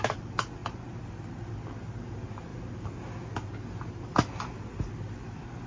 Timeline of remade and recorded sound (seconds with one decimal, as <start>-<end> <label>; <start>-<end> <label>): 0.0-5.7 recorded